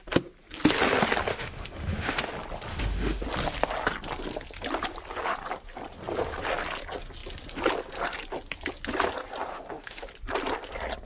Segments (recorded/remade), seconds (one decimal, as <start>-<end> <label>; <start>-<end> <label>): 0.0-1.3 recorded; 1.3-2.3 remade; 2.3-2.7 recorded; 2.7-3.2 remade; 3.2-9.5 recorded; 9.5-10.0 remade; 10.0-11.1 recorded